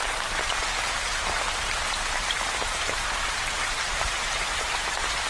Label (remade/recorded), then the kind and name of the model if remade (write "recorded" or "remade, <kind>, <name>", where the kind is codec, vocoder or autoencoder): remade, vocoder, BigVGAN v2